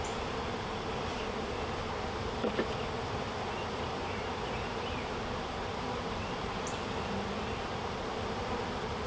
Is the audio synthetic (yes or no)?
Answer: yes